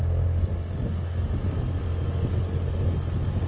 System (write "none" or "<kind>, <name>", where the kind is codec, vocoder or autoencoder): none